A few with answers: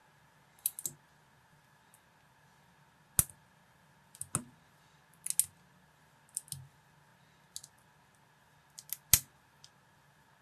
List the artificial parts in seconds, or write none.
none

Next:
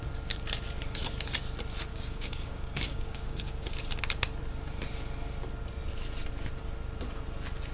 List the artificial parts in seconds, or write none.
1.9-3.7 (codec, DAC)

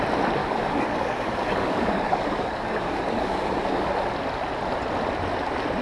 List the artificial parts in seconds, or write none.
0.4-3.9 (codec, DAC)

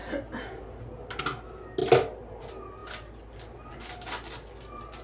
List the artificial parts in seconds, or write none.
none

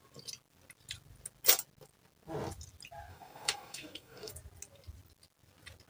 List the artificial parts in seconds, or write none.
3.1-4.3 (codec, DAC)